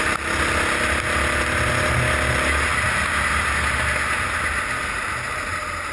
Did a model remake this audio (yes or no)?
no